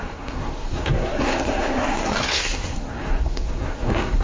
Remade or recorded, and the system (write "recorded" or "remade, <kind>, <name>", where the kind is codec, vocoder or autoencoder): remade, codec, SNAC